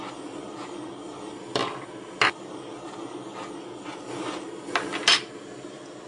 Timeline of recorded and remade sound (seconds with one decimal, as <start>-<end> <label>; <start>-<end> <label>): 0.0-6.1 recorded